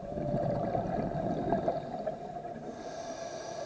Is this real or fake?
real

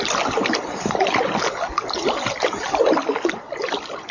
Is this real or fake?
real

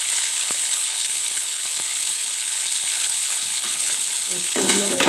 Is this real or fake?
fake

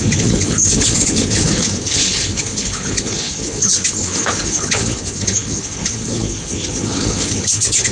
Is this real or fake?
fake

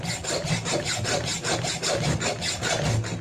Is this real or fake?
real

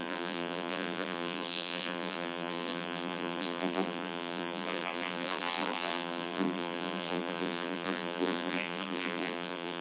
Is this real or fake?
fake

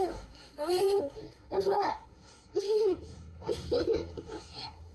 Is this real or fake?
fake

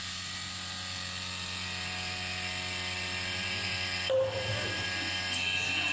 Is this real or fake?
real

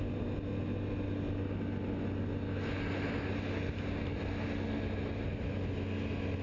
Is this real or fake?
real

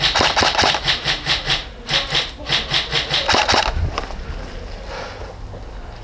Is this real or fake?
real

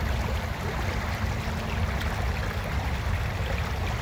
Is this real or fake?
real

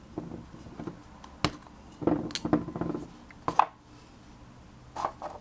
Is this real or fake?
real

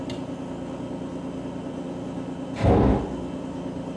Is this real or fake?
real